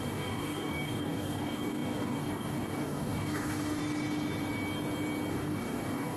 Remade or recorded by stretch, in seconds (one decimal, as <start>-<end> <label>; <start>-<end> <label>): 0.0-3.8 remade; 3.8-5.3 recorded; 5.3-6.2 remade